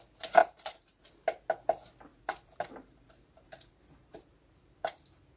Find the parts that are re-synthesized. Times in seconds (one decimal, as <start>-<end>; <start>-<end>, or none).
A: 0.4-1.0; 2.1-4.4